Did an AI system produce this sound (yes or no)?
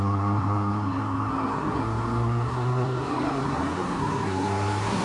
yes